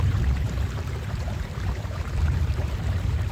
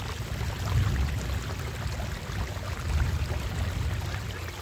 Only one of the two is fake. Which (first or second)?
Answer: first